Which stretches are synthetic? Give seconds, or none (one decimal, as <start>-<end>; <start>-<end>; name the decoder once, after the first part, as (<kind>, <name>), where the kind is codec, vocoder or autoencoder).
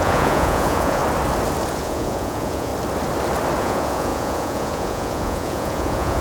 0.0-1.0 (vocoder, Vocos); 1.7-2.7; 3.6-6.2